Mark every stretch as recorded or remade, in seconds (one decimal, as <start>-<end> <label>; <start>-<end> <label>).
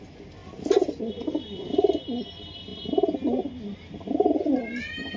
0.0-5.2 recorded